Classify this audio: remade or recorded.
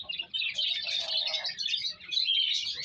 recorded